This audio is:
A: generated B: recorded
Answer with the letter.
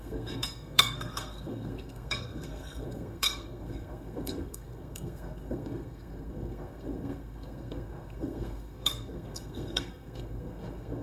A